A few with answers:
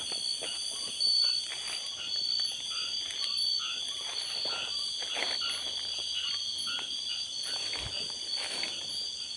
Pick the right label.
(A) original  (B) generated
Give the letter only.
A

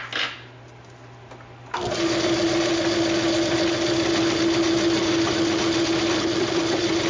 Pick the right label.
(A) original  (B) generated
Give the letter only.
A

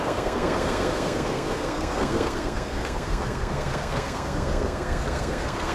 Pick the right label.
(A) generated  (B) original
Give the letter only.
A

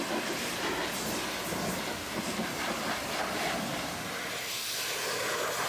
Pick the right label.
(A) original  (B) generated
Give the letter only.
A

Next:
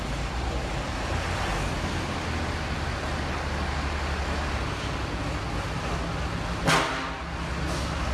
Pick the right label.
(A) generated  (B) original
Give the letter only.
B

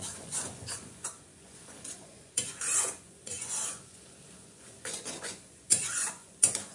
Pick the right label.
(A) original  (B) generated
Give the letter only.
B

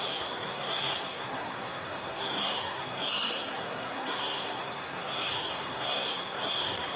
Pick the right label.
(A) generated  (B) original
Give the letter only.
A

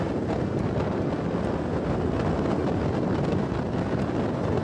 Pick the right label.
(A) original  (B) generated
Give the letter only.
A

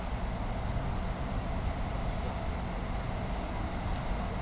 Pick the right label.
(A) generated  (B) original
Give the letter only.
B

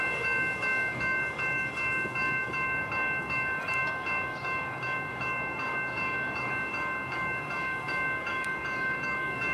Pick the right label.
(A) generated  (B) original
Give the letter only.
A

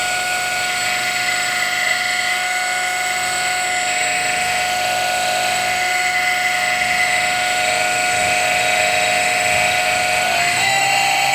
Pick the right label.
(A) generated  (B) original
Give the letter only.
A